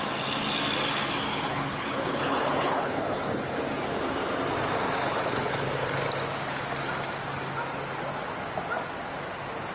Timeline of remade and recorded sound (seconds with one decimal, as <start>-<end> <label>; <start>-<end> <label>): 0.0-1.3 recorded; 1.3-3.6 remade; 3.6-5.0 recorded; 5.0-5.6 remade; 5.6-9.7 recorded

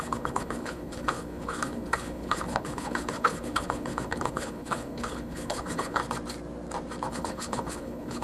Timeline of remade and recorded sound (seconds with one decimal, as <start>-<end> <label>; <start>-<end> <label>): 0.0-6.0 remade; 6.0-7.1 recorded; 7.1-8.2 remade

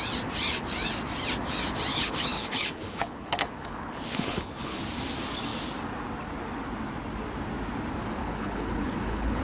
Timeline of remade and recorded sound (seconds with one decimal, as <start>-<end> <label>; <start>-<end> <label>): 0.0-1.9 recorded; 1.9-4.8 remade; 4.8-8.2 recorded; 8.2-9.4 remade